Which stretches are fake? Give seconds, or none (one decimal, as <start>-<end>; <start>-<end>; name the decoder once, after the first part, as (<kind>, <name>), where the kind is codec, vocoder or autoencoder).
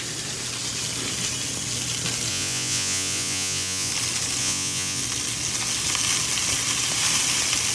2.3-3.9 (vocoder, Vocos); 4.4-5.0